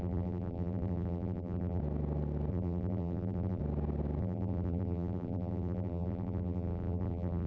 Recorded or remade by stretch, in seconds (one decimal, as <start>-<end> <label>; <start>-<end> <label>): 0.0-1.8 remade; 1.8-2.5 recorded; 2.5-3.6 remade; 3.6-4.2 recorded; 4.2-7.5 remade